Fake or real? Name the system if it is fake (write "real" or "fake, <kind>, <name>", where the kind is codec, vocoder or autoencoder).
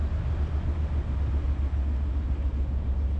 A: real